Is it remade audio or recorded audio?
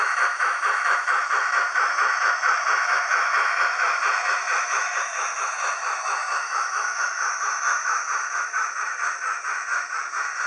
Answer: remade